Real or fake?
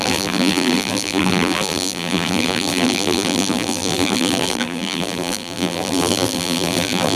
fake